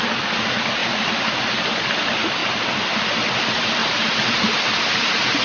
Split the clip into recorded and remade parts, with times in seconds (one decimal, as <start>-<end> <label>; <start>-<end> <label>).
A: 0.0-0.8 recorded; 0.8-1.4 remade; 1.4-3.8 recorded; 3.8-4.4 remade; 4.4-5.4 recorded